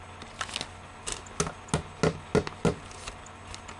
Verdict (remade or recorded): recorded